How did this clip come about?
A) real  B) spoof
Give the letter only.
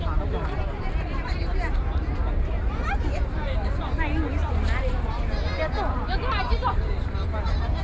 B